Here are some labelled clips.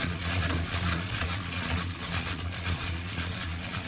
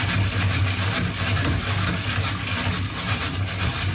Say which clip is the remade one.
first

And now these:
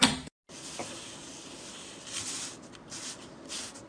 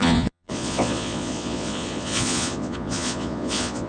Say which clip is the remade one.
second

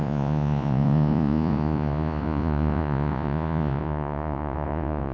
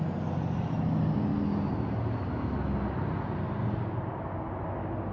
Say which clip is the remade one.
first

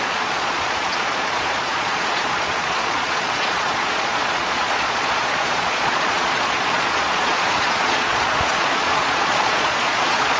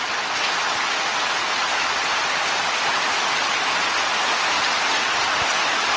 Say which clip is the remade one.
first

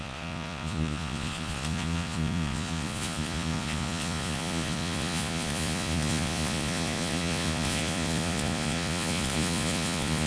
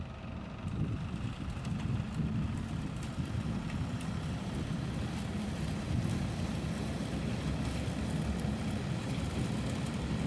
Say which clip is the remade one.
first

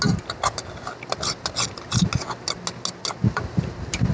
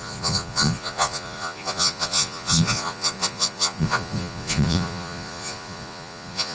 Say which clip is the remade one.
second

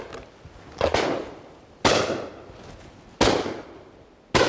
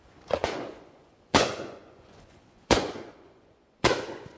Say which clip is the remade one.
second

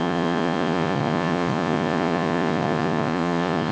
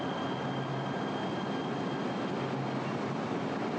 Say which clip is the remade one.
first